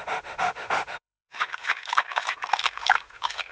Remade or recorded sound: remade